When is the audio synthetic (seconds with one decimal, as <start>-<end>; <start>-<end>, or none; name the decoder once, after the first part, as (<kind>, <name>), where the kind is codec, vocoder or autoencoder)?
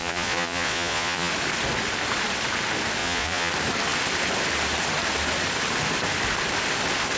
0.0-1.3 (vocoder, Vocos); 3.0-3.5